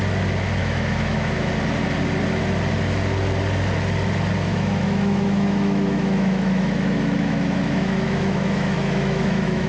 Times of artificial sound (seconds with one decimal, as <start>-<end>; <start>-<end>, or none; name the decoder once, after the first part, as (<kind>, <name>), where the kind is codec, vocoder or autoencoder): 0.6-1.5 (autoencoder, DAC-VAE); 4.5-9.7